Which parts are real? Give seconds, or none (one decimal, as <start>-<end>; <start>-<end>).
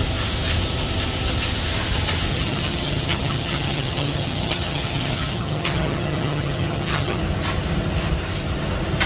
0.0-2.3; 7.2-9.1